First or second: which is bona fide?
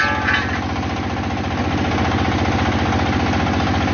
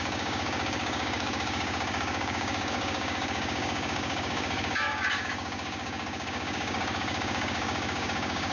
first